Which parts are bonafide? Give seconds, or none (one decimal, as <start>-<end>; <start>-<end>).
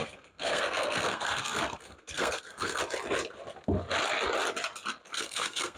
2.8-5.1